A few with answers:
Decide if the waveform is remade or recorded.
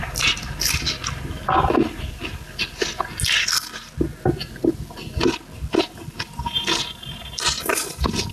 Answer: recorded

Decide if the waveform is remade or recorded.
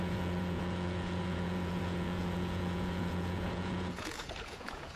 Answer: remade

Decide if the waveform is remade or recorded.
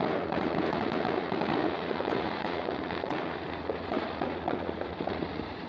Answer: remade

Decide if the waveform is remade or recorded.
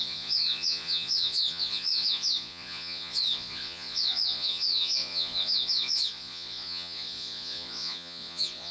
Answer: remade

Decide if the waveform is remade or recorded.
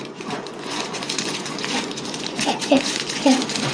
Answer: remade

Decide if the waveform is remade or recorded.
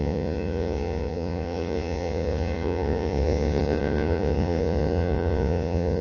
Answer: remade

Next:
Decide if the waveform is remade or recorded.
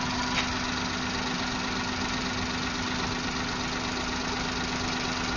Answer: recorded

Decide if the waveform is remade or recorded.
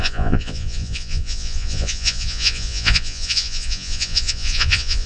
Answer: remade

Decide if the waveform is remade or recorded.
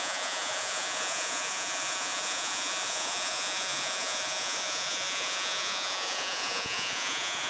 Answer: remade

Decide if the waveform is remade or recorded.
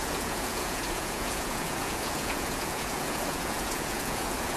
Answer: remade